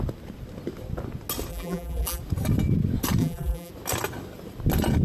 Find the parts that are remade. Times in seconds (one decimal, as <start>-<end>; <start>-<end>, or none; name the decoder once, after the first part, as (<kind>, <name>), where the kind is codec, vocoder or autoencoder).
1.5-2.2 (vocoder, BigVGAN v2); 3.2-3.7